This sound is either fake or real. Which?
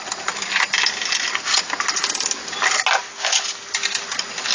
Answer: real